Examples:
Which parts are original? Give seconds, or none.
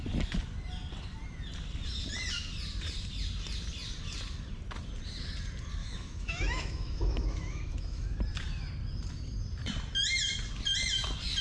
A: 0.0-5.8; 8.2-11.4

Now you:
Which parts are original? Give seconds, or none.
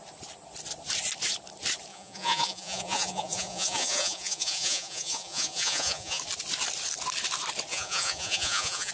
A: 0.0-1.9; 6.2-7.7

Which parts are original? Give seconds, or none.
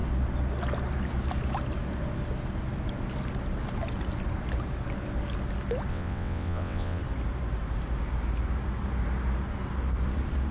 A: 0.0-5.9; 7.0-10.5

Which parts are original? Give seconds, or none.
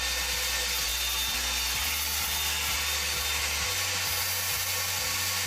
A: 0.0-5.5